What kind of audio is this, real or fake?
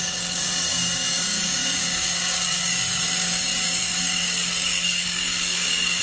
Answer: fake